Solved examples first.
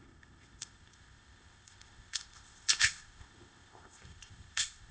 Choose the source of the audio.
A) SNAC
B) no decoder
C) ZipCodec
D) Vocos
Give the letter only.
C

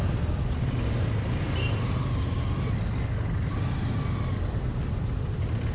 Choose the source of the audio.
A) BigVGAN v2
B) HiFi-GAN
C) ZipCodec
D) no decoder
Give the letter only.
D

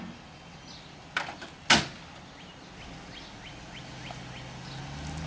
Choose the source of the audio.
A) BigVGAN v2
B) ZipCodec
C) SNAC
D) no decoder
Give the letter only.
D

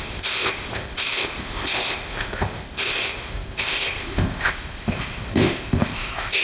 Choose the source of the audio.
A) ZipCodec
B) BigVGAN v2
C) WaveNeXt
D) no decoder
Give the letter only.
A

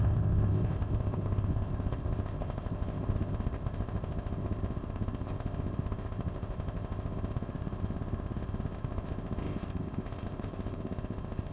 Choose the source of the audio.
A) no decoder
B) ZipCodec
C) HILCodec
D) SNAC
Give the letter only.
B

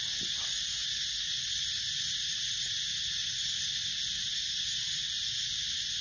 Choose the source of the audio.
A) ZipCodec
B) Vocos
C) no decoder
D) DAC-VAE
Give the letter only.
C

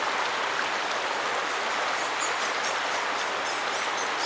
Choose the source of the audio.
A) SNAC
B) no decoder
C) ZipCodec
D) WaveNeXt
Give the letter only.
B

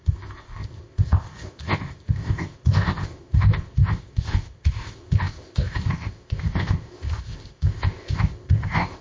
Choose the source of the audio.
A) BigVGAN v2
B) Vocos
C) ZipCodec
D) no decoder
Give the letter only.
C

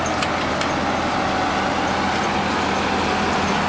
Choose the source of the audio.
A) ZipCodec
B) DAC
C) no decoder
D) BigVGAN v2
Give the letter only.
C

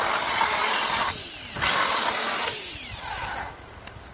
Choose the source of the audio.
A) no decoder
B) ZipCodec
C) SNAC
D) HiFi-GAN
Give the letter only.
A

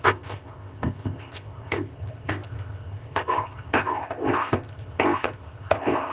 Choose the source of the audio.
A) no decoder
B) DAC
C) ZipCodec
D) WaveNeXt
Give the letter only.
C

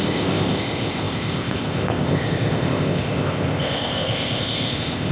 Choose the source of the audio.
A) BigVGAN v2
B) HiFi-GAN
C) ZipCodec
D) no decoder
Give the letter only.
C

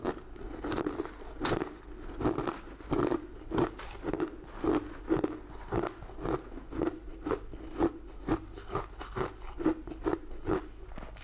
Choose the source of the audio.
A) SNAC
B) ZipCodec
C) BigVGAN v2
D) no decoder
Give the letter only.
D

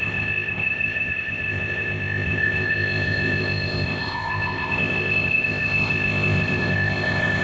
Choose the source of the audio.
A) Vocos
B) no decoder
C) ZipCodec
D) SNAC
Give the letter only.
C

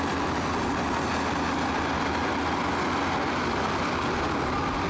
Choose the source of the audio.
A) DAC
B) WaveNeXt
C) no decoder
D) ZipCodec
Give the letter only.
C